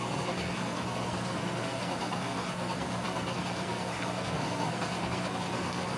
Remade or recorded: remade